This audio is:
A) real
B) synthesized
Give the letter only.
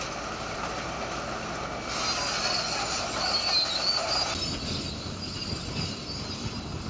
A